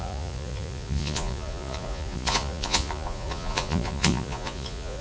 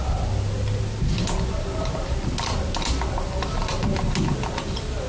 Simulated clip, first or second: first